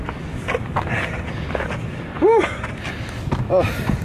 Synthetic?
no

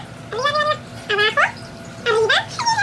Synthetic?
no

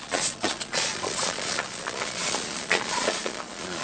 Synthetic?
yes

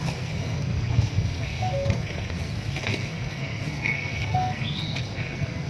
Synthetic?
yes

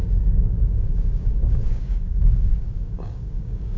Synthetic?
yes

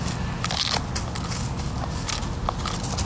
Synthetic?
no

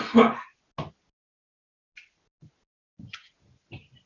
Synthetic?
no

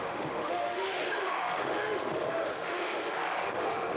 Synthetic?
yes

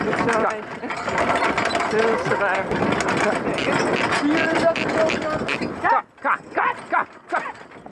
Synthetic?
no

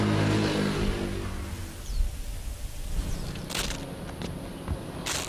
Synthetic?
no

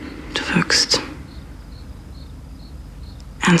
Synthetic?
no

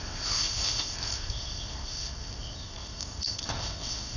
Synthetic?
yes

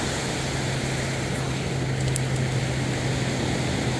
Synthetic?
no